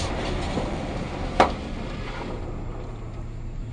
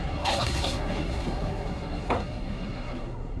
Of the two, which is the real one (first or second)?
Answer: first